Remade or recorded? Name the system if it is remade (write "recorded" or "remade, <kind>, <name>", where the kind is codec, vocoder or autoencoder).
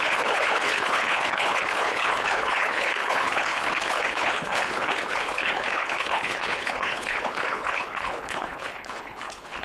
remade, codec, HILCodec